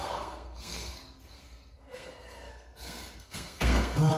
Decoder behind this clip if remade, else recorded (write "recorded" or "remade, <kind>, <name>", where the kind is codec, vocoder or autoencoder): remade, codec, SNAC